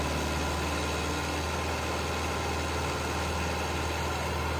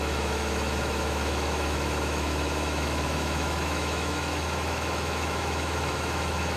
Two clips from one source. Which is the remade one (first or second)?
second